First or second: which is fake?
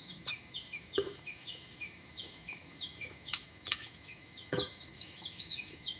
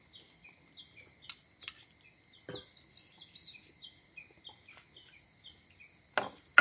first